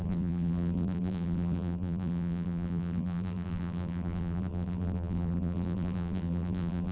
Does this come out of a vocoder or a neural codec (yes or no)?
yes